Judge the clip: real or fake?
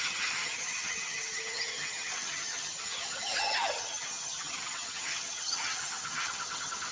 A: fake